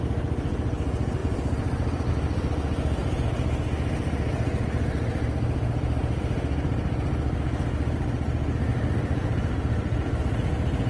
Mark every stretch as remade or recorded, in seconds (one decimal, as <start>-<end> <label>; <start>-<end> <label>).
0.0-1.2 recorded; 1.2-2.1 remade; 2.1-8.7 recorded; 8.7-10.2 remade; 10.2-10.9 recorded